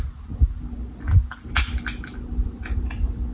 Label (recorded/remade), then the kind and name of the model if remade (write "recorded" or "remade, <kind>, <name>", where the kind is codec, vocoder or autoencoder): recorded